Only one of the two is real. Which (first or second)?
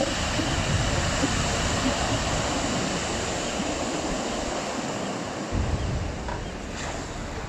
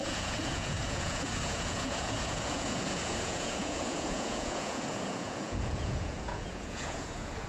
first